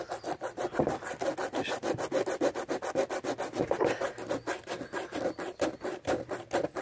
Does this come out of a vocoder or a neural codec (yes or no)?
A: no